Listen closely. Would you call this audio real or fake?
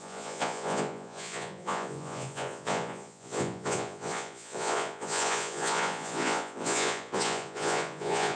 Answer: fake